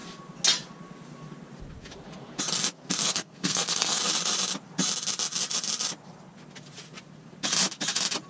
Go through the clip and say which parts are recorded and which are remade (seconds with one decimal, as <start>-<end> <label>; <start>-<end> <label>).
0.0-3.0 recorded; 3.0-4.0 remade; 4.0-8.3 recorded